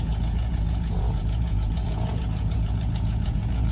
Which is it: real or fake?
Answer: fake